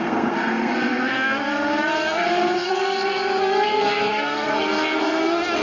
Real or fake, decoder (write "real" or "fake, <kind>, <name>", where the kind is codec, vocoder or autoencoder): fake, codec, SNAC